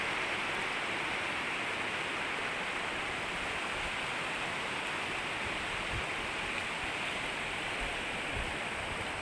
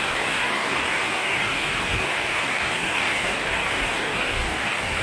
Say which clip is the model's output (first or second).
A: second